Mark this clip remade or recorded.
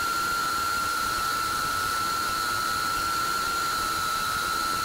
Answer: remade